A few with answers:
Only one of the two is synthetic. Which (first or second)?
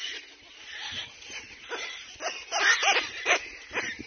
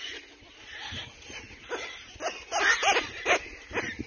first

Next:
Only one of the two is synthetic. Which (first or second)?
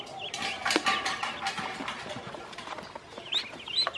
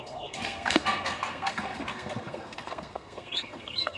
second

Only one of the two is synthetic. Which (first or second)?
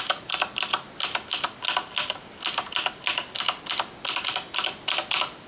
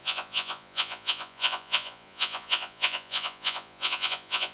second